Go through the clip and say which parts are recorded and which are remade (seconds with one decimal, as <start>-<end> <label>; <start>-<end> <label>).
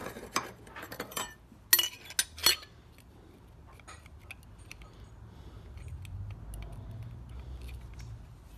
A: 0.0-1.4 remade; 1.4-8.6 recorded